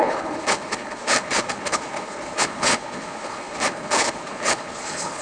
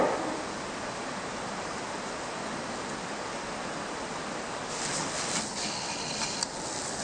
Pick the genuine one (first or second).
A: second